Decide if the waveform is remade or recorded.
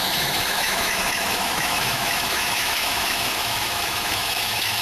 remade